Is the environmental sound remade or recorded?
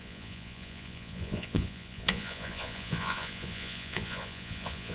remade